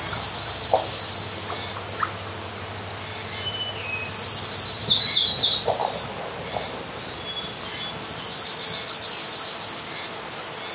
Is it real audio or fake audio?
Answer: real